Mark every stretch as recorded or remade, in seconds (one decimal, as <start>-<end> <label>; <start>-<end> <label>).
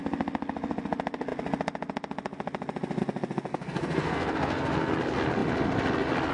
0.0-3.5 recorded; 3.5-4.9 remade; 4.9-6.3 recorded